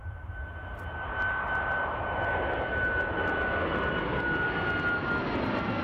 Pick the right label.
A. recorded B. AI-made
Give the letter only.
A